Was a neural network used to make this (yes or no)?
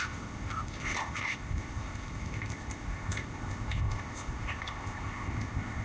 yes